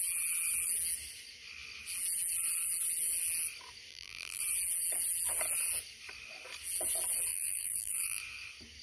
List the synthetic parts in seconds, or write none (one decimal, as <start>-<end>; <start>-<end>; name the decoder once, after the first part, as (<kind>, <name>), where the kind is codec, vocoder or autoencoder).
3.9-4.4 (vocoder, BigVGAN v2); 7.3-8.2